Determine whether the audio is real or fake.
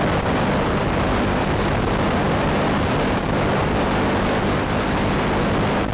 real